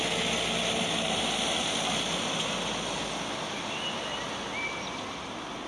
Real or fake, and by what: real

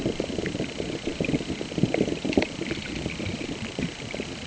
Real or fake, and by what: real